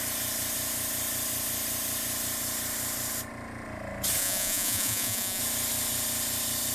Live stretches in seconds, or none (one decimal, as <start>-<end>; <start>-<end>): 0.0-4.2; 5.4-6.7